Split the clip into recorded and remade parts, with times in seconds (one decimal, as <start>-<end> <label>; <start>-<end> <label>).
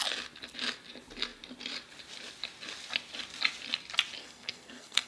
0.0-4.2 recorded; 4.2-5.1 remade